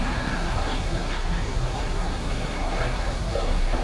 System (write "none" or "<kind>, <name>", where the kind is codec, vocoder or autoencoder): codec, SNAC